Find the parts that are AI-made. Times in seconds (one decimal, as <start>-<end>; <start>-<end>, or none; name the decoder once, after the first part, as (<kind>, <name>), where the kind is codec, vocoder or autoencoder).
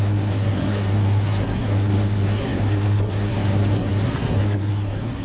0.0-5.2 (codec, SNAC)